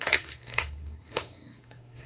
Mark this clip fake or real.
fake